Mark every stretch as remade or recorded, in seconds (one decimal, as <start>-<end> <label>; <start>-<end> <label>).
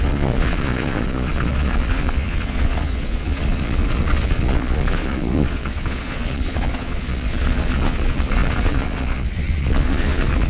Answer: 0.0-10.5 remade